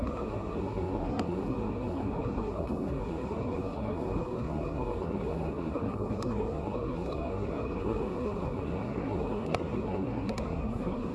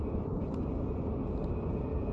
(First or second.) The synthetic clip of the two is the first